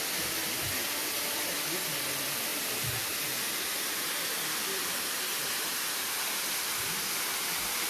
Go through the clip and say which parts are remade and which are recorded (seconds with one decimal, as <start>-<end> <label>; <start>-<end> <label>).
0.0-7.9 recorded

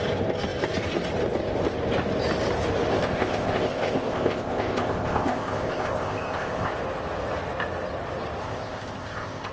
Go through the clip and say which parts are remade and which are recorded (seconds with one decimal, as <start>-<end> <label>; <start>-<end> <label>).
0.0-2.9 recorded; 2.9-6.7 remade; 6.7-8.4 recorded; 8.4-9.5 remade

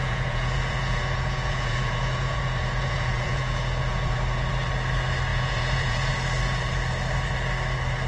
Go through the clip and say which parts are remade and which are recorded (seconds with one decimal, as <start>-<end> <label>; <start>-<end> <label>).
0.0-4.5 remade; 4.5-5.3 recorded; 5.3-6.1 remade; 6.1-8.1 recorded

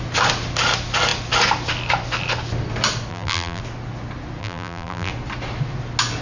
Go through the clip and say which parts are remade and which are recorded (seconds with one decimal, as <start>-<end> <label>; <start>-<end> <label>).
0.0-3.1 recorded; 3.1-3.6 remade; 3.6-4.4 recorded; 4.4-5.1 remade; 5.1-6.2 recorded

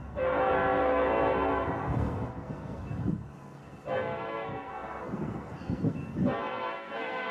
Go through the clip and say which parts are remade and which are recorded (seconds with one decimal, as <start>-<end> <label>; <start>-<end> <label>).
0.0-7.3 remade

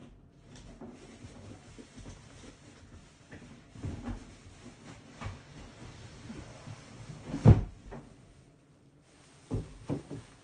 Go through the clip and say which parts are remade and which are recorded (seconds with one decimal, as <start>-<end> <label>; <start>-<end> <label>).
0.0-10.4 recorded